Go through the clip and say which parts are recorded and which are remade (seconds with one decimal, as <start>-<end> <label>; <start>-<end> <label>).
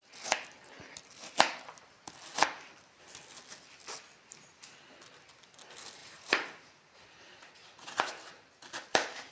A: 0.0-6.0 recorded; 6.0-8.1 remade; 8.1-9.3 recorded